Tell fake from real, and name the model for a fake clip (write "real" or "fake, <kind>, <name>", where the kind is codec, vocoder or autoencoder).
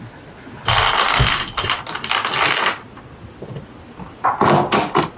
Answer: real